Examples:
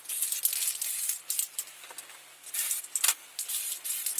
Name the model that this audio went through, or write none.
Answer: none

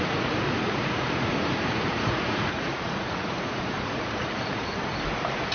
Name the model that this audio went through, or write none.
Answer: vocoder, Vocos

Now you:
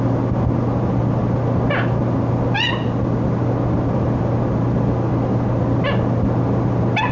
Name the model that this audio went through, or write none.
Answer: none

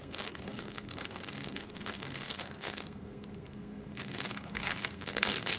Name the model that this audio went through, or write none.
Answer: codec, SNAC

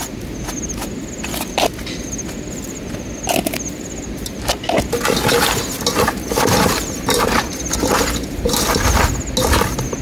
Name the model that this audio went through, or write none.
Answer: none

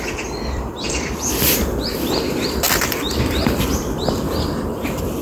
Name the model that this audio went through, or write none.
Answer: vocoder, BigVGAN v2